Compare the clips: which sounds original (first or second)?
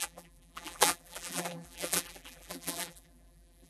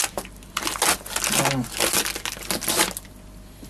second